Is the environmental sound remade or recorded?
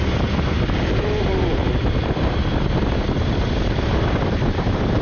remade